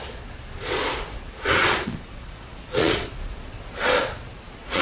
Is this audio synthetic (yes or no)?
yes